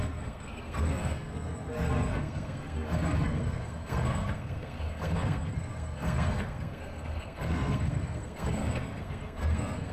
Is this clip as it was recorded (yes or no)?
no